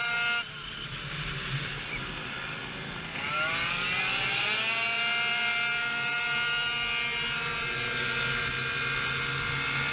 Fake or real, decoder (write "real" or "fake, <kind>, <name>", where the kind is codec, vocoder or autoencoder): real